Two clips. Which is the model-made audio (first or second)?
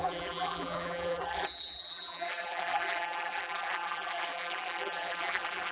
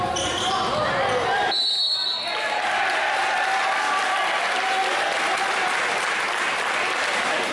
first